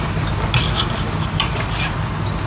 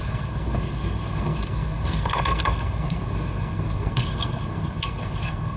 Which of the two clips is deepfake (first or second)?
second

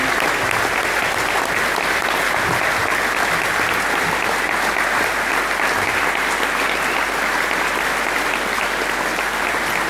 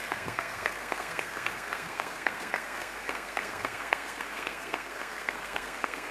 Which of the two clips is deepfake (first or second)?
second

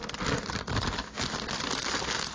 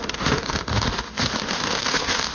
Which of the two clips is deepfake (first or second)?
second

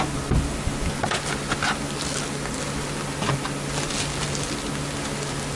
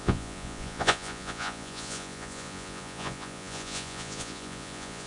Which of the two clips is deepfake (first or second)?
second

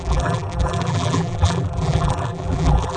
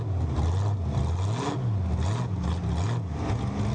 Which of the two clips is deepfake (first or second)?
first